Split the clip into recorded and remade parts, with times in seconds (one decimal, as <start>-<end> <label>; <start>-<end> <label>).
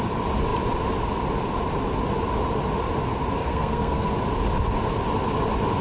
0.0-3.4 recorded; 3.4-4.1 remade; 4.1-5.8 recorded